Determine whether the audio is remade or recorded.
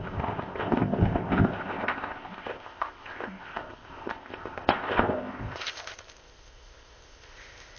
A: remade